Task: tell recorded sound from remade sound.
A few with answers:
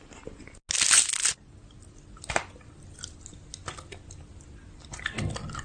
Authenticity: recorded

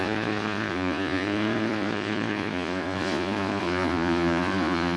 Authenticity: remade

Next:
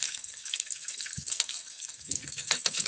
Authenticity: remade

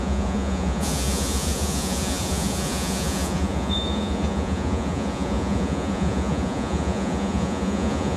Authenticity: remade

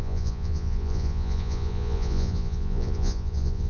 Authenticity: remade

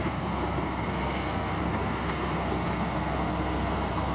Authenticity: remade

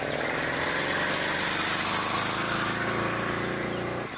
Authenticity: recorded